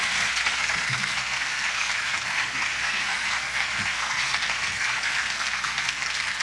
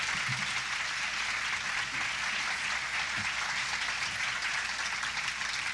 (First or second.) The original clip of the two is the second